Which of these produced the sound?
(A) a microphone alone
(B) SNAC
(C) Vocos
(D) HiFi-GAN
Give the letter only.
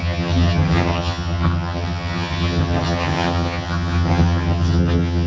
D